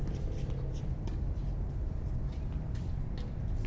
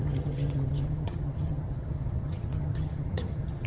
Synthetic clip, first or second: second